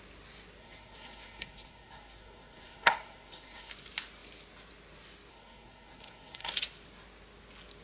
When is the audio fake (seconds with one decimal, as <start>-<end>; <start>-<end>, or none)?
0.6-3.7; 5.3-6.5